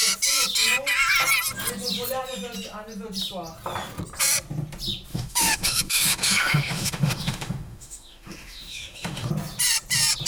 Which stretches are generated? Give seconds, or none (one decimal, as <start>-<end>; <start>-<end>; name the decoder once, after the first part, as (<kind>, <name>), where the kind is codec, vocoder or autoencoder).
5.1-9.3 (autoencoder, DAC-VAE)